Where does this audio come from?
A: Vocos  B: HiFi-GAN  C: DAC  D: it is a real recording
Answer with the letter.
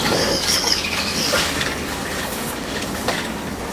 C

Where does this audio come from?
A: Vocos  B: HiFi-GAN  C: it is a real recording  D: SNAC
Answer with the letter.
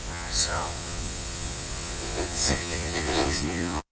A